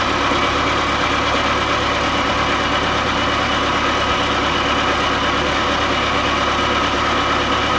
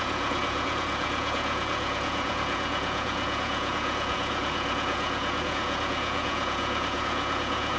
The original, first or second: first